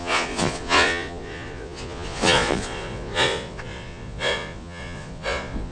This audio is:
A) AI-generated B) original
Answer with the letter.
A